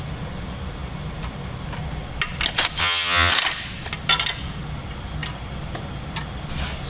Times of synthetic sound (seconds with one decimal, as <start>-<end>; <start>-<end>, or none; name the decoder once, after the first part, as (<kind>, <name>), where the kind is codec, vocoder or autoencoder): 2.8-3.3 (vocoder, HiFi-GAN)